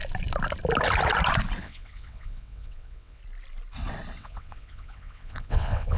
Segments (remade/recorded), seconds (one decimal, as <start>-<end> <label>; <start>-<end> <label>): 0.0-1.6 recorded; 1.6-3.2 remade; 3.2-4.2 recorded; 4.2-6.0 remade